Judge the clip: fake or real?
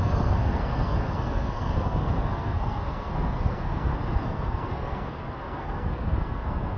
fake